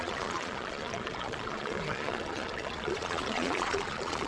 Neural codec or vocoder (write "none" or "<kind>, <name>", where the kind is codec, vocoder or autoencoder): vocoder, Vocos